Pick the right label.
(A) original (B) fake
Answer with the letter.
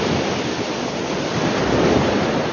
A